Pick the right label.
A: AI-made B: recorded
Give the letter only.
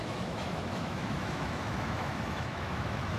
A